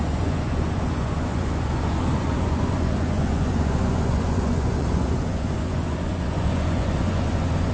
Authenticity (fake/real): fake